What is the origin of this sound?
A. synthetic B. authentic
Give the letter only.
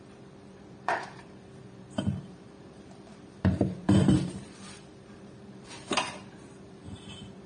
A